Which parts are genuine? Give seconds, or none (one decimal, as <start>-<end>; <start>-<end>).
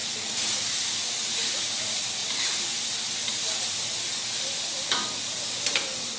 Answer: 1.6-6.2